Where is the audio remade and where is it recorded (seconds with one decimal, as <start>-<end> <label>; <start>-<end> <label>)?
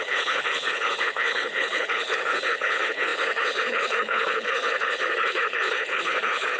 0.0-6.6 remade